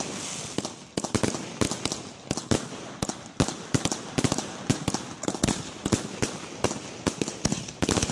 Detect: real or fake real